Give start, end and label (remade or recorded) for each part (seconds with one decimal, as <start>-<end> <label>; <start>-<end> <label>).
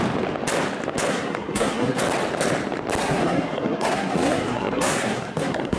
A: 0.0-1.1 recorded; 1.1-2.0 remade; 2.0-3.0 recorded; 3.0-5.8 remade